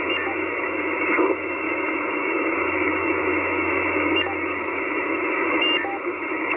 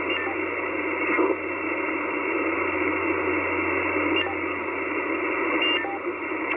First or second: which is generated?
first